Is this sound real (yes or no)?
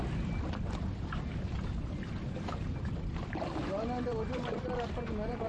yes